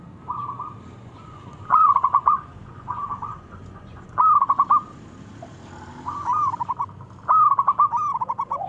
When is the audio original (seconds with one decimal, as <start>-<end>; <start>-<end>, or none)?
0.0-1.0; 4.2-8.7